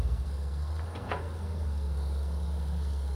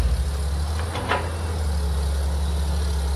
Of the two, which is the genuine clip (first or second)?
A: second